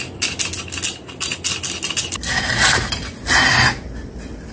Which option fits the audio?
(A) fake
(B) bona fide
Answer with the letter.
B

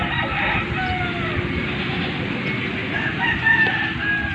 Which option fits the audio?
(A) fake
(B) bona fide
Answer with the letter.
B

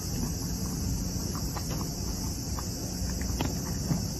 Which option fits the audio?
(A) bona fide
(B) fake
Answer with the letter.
A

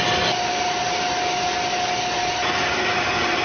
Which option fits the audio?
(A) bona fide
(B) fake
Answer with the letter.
A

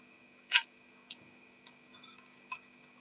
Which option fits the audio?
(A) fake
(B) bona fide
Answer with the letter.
A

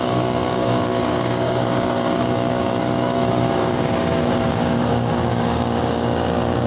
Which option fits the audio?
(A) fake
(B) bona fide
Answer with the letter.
A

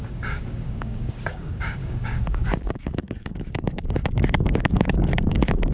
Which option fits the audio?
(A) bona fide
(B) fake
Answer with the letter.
B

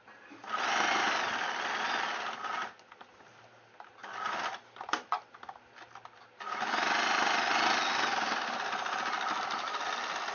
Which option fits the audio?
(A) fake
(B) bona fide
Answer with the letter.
B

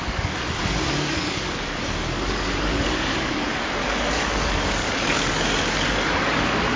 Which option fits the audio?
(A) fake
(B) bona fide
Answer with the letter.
A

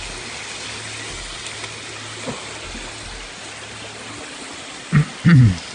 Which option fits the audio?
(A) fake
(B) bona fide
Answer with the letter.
B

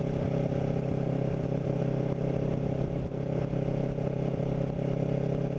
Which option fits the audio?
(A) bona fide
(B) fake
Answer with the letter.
A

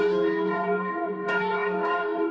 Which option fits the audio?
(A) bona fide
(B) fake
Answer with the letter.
B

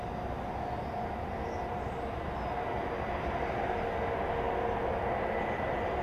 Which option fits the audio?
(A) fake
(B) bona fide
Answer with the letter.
B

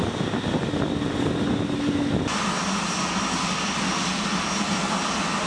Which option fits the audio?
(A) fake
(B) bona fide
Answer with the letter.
B